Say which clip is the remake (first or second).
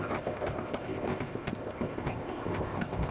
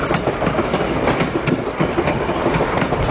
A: first